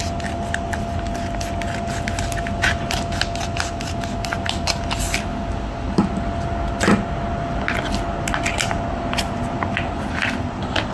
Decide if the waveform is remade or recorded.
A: recorded